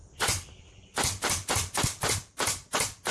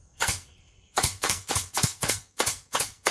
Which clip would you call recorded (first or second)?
first